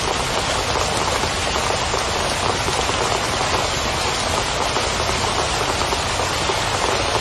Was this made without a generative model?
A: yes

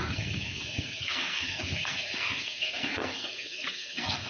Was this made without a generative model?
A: no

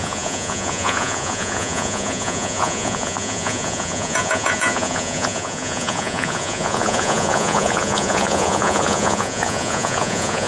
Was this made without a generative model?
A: no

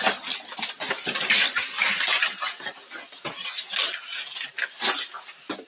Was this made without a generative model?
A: yes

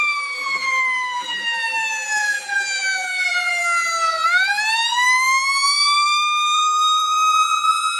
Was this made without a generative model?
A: no